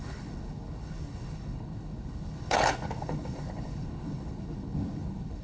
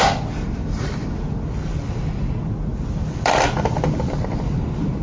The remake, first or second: first